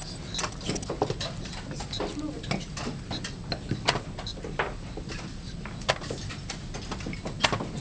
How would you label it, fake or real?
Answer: real